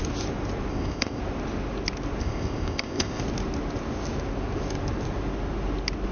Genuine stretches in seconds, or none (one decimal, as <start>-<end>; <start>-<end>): 0.0-0.7; 1.2-2.2; 3.2-6.1